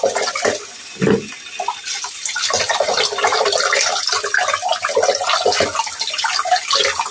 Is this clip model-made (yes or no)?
no